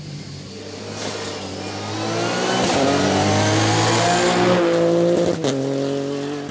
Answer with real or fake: real